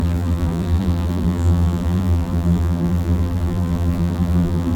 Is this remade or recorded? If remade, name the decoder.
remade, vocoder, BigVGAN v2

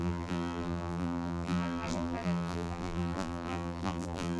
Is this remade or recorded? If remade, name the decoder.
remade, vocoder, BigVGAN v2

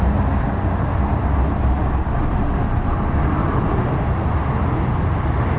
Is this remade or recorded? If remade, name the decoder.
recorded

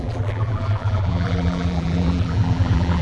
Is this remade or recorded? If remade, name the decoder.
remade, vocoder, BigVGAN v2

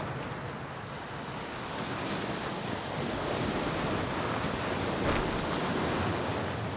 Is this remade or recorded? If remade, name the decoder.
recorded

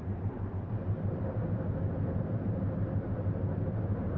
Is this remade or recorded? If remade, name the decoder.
remade, vocoder, BigVGAN v2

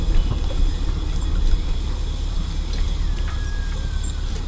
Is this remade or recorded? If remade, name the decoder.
recorded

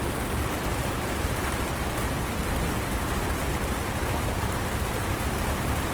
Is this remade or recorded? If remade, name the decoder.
recorded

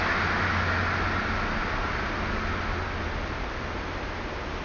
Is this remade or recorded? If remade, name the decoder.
recorded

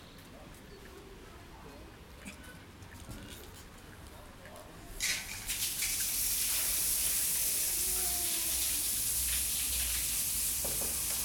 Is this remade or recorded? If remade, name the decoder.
recorded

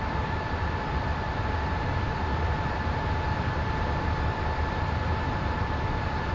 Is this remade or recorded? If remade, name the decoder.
remade, vocoder, BigVGAN v2